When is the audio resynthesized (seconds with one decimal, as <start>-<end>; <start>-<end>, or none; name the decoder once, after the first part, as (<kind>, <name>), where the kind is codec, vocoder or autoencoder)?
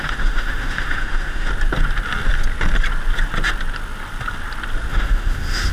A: 0.0-1.5 (autoencoder, DAC-VAE); 4.9-5.7